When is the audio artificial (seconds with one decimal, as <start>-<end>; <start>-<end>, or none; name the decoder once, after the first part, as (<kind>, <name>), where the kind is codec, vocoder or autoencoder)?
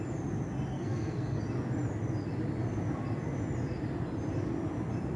0.7-1.4 (codec, SNAC)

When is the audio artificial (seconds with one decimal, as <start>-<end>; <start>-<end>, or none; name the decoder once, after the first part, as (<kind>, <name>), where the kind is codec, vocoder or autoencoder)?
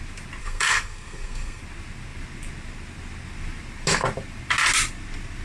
0.4-1.6 (codec, SNAC)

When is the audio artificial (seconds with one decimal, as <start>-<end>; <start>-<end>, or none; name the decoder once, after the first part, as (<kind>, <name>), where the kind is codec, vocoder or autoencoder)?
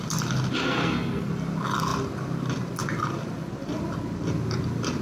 0.6-1.3 (codec, SNAC)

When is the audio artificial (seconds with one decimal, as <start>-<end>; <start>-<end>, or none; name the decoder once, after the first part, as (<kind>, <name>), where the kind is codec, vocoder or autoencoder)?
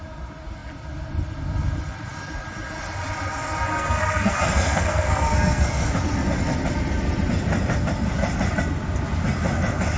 3.7-5.9 (codec, SNAC)